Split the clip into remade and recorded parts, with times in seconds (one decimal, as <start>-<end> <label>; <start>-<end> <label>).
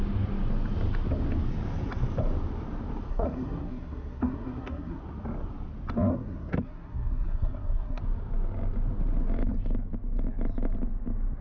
0.0-3.1 recorded; 3.1-5.0 remade; 5.0-6.1 recorded; 6.1-8.0 remade; 8.0-11.4 recorded